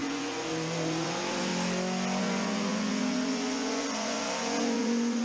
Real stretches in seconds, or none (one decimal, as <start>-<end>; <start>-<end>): 1.5-2.2